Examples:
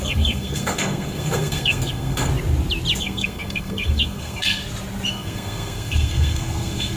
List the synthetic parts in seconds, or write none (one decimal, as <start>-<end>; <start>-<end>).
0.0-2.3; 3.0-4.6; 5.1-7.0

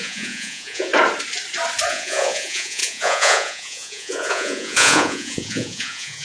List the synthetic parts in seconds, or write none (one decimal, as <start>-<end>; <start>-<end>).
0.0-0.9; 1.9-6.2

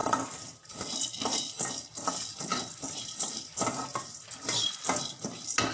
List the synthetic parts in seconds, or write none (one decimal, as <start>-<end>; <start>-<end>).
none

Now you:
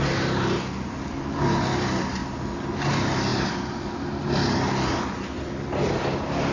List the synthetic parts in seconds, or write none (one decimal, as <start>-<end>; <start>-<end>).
none

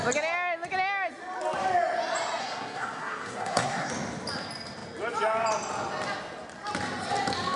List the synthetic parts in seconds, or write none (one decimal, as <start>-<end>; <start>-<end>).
2.4-3.9

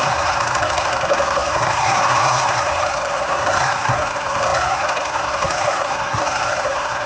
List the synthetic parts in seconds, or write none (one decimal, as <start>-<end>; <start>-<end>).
0.0-7.1